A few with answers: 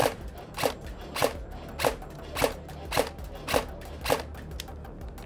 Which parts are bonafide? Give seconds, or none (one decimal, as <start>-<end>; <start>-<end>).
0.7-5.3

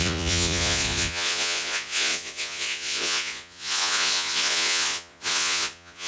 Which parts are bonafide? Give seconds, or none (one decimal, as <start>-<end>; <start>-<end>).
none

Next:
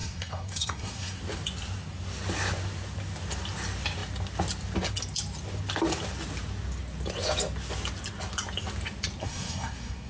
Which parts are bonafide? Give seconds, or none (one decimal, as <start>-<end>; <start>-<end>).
1.2-9.2

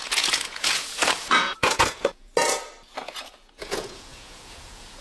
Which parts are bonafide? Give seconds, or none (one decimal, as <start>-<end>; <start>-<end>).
2.3-2.9

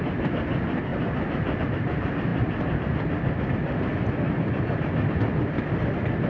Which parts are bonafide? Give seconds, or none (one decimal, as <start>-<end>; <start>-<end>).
0.0-6.3